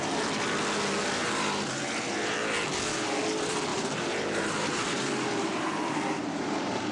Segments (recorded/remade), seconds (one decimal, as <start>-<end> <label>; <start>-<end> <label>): 0.0-1.2 recorded; 1.2-2.4 remade; 2.4-3.7 recorded; 3.7-6.9 remade